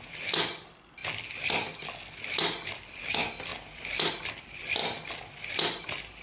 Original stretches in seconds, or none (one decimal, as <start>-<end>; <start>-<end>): 0.0-6.2